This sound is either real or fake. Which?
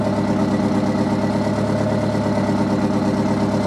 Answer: real